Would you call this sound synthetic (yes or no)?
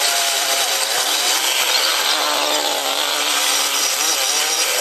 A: no